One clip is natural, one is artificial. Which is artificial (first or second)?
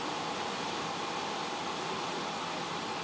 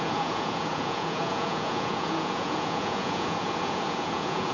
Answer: second